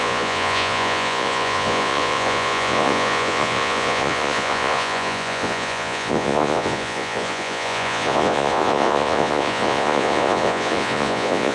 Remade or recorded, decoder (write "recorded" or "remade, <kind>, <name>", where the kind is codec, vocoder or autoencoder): remade, vocoder, Vocos